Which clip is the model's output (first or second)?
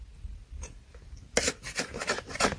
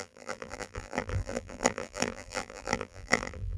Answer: second